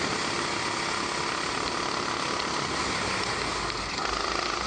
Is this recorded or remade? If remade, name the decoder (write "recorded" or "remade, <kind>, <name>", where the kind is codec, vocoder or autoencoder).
recorded